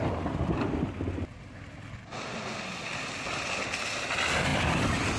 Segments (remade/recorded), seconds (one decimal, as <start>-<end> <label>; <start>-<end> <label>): 0.0-5.2 recorded